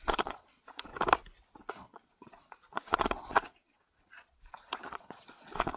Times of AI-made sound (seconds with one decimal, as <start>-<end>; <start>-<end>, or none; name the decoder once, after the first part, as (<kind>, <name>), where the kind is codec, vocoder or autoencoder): 0.0-0.9 (vocoder, Vocos); 1.7-5.8